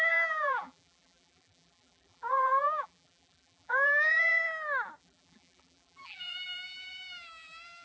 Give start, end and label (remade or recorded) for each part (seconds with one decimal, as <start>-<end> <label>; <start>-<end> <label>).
0.0-4.3 remade; 4.3-5.0 recorded; 5.0-7.8 remade